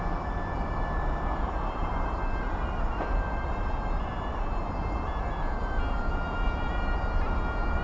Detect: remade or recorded recorded